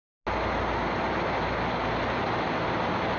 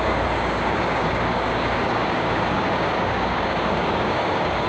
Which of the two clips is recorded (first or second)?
first